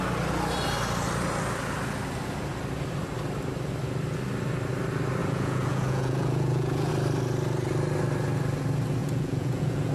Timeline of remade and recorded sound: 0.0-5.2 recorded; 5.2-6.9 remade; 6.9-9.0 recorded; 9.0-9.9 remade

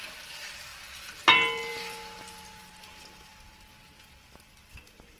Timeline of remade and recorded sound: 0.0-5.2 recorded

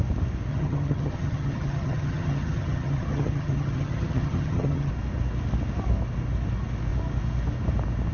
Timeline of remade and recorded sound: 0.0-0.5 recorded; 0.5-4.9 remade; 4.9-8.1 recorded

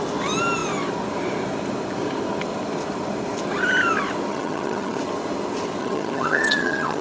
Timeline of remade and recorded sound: 0.0-4.3 recorded; 4.3-5.0 remade; 5.0-5.8 recorded; 5.8-7.0 remade

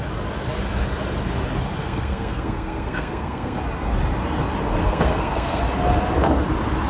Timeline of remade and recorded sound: 0.0-1.8 recorded; 1.8-3.6 remade; 3.6-4.8 recorded; 4.8-5.6 remade; 5.6-6.9 recorded

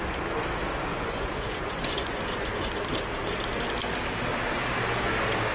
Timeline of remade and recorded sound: 0.0-0.9 recorded; 0.9-2.7 remade; 2.7-5.5 recorded